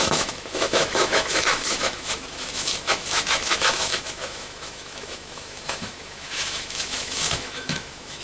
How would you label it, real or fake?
fake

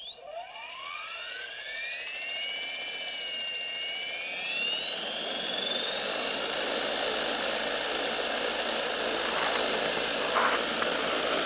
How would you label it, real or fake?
real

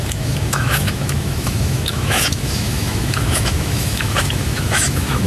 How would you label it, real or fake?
fake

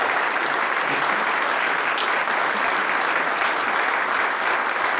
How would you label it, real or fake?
real